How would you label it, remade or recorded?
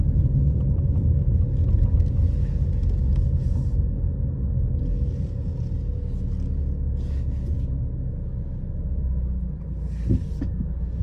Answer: recorded